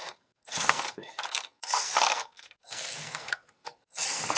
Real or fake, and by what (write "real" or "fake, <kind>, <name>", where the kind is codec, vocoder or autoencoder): fake, codec, SNAC